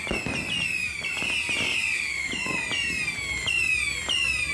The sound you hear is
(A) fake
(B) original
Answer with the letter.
B